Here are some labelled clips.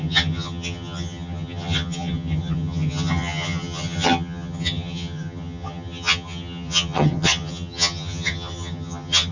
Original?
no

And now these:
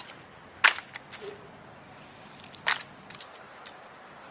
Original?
yes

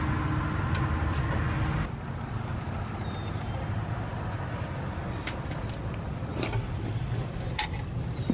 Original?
yes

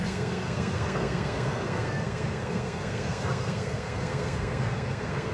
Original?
no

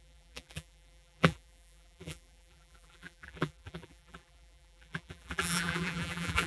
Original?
no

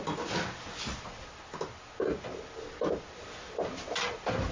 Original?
yes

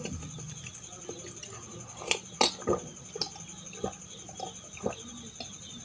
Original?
yes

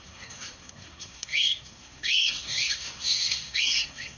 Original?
no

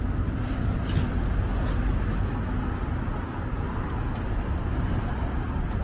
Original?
yes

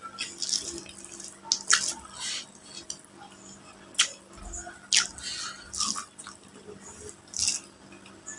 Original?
yes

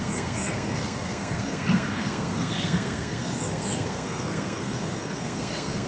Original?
no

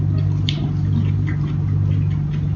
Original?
yes